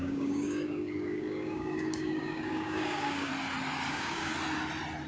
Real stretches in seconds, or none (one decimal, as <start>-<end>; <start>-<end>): 3.3-3.9; 4.3-5.1